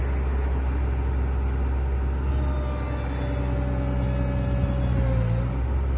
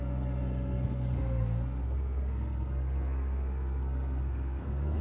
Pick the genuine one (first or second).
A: first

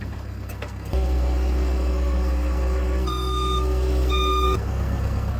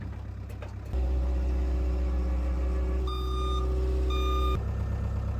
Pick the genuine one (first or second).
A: second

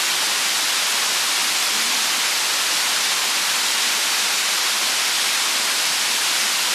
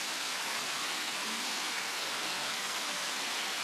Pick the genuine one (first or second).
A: first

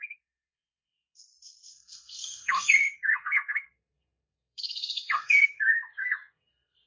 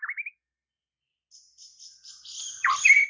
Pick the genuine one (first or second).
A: second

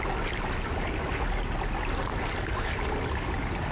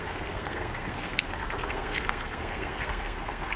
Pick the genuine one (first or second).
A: first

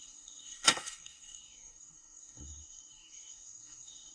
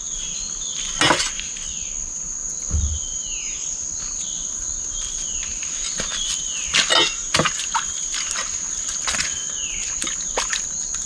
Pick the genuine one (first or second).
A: second